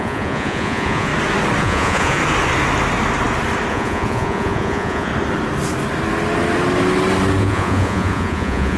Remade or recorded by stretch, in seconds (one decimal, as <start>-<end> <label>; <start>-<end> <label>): 0.0-1.1 remade; 1.1-1.6 recorded; 1.6-2.2 remade; 2.2-3.7 recorded; 3.7-5.1 remade; 5.1-7.4 recorded; 7.4-8.8 remade